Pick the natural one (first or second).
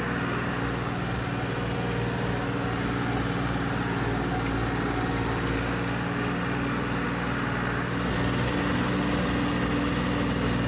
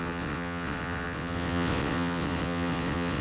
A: first